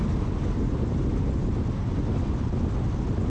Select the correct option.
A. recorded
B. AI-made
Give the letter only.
A